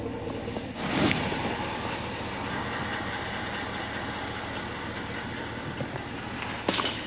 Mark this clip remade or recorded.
recorded